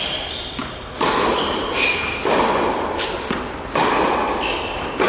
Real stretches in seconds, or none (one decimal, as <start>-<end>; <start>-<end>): 0.0-5.1